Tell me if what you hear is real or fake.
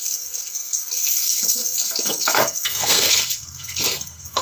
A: fake